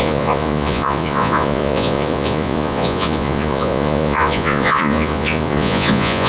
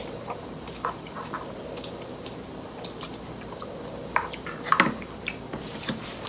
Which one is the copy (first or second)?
first